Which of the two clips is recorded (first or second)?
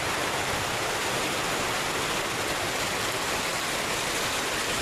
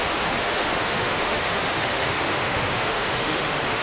first